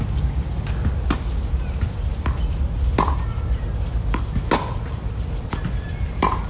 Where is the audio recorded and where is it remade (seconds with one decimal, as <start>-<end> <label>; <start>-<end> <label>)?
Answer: 0.0-6.5 recorded